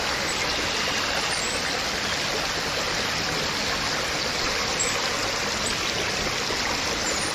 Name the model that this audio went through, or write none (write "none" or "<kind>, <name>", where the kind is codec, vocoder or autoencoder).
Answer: none